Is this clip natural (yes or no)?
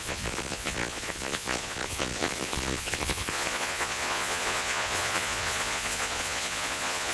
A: no